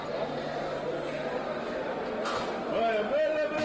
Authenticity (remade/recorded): recorded